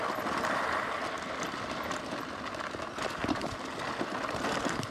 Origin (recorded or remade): recorded